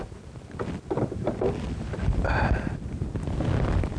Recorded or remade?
remade